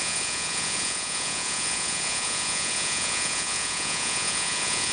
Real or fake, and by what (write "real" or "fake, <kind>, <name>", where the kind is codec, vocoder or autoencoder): fake, vocoder, Vocos